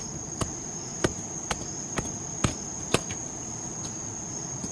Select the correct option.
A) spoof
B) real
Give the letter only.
B